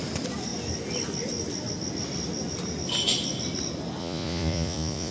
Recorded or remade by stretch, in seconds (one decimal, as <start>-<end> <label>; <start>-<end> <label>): 0.0-4.0 recorded; 4.0-5.1 remade

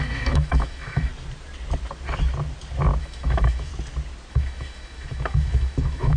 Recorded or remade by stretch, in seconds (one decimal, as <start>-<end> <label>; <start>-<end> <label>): 0.0-1.1 remade; 1.1-3.0 recorded; 3.0-3.7 remade; 3.7-4.3 recorded; 4.3-6.2 remade

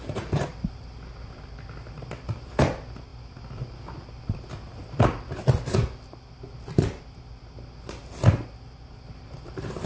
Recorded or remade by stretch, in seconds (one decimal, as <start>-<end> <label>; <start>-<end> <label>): 0.0-9.9 recorded

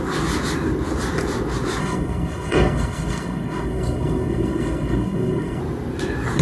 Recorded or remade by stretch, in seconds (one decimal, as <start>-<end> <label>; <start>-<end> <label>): 0.0-1.8 recorded; 1.8-5.6 remade; 5.6-6.4 recorded

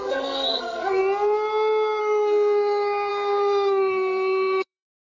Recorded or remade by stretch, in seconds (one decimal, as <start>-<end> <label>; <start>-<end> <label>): 0.0-1.0 remade; 1.0-2.0 recorded; 2.0-5.1 remade